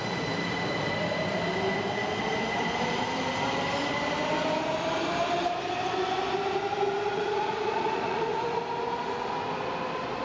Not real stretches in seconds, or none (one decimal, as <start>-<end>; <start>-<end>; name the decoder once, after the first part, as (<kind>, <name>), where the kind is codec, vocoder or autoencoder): 7.1-8.4 (vocoder, Vocos)